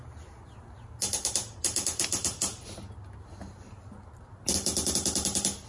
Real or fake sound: real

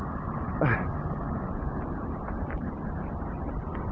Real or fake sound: real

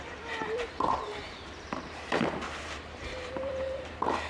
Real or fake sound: fake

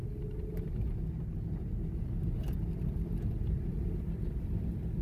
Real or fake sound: real